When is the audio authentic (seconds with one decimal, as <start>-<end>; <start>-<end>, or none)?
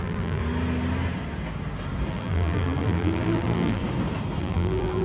0.4-2.1; 3.8-4.4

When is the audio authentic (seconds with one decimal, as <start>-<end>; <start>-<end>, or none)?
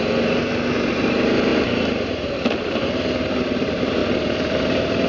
4.0-5.1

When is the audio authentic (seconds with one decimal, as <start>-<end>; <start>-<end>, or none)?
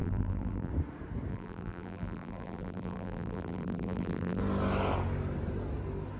0.7-1.3; 4.4-6.2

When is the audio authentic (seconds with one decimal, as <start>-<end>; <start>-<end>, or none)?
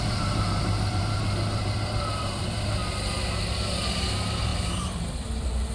2.8-3.9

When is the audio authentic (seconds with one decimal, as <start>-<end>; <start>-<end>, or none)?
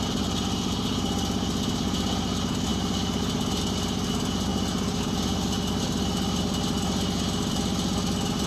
0.0-8.5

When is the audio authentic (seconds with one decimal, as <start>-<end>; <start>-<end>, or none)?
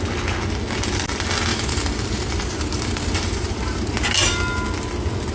0.0-1.5; 3.9-5.3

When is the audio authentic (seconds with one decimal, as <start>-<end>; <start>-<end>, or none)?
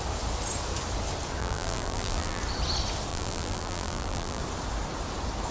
0.0-1.4; 2.4-3.1; 4.4-5.5